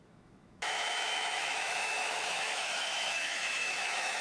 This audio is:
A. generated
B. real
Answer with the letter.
A